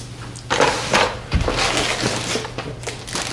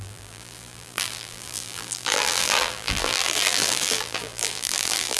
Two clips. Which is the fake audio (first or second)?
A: second